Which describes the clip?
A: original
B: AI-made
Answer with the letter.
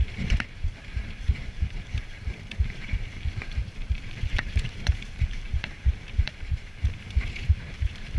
B